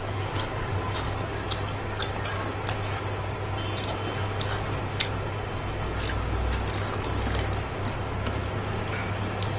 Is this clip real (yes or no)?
yes